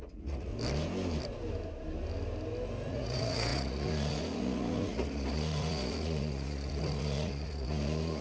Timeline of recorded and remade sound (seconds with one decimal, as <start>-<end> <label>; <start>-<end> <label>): 0.0-0.5 remade; 0.5-2.9 recorded; 2.9-8.2 remade